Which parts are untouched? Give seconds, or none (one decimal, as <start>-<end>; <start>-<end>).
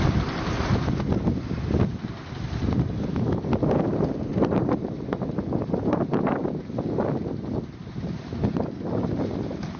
0.0-4.3; 6.8-9.8